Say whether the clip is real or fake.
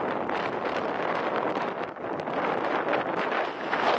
real